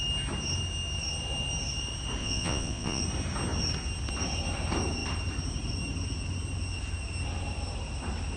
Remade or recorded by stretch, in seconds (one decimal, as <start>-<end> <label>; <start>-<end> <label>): 0.0-2.2 recorded; 2.2-3.0 remade; 3.0-8.4 recorded